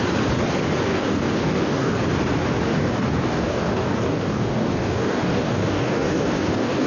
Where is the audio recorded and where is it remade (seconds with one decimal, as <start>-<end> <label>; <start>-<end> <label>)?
0.0-0.9 recorded; 0.9-2.0 remade; 2.0-2.7 recorded; 2.7-6.9 remade